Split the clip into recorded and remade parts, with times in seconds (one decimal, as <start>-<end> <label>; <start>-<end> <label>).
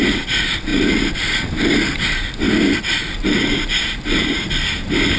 0.0-5.2 recorded